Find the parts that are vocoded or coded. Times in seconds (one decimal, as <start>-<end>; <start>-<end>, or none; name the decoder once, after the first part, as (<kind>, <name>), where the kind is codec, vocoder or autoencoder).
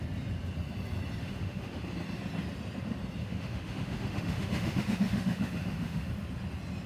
1.2-1.8 (autoencoder, DAC-VAE); 3.2-6.1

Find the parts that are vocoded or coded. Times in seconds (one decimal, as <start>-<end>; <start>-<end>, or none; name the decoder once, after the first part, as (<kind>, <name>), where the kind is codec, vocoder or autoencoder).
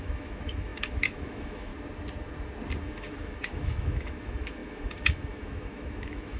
0.0-1.7 (autoencoder, DAC-VAE); 2.8-6.4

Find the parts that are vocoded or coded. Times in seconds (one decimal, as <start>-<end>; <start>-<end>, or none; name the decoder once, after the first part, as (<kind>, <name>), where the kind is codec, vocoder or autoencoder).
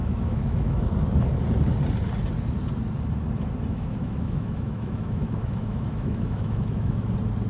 0.0-0.8 (autoencoder, DAC-VAE); 3.7-7.1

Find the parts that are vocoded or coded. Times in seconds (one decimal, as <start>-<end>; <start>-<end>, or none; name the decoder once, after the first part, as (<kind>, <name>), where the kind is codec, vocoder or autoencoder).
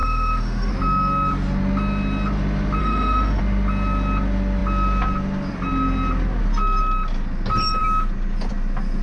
0.0-0.7 (autoencoder, DAC-VAE); 2.8-3.4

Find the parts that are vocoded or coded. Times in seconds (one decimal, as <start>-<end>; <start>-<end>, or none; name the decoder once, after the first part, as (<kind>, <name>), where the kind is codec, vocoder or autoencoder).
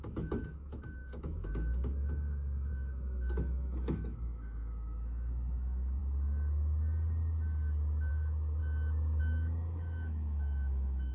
0.0-6.0 (autoencoder, DAC-VAE); 8.1-8.6; 9.2-11.1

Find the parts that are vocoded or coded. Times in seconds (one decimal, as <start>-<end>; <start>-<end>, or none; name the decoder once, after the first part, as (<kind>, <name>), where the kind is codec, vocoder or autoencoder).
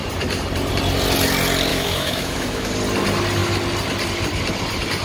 1.7-2.7 (autoencoder, DAC-VAE)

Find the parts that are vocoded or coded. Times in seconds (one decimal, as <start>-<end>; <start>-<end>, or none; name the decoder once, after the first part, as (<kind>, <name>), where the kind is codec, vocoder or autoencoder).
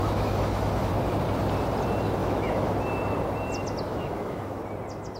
0.0-0.9 (autoencoder, DAC-VAE); 2.2-2.7; 3.9-4.6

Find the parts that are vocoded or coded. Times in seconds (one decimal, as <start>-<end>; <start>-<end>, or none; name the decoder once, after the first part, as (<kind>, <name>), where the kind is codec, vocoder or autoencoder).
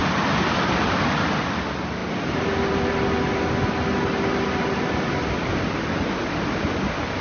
none